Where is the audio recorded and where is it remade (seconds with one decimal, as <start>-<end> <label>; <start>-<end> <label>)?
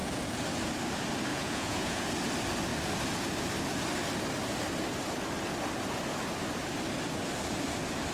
0.0-1.3 recorded; 1.3-2.1 remade; 2.1-8.1 recorded